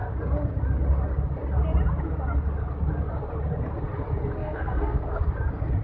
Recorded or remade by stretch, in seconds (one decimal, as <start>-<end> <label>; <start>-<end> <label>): 0.0-4.4 recorded; 4.4-5.2 remade; 5.2-5.8 recorded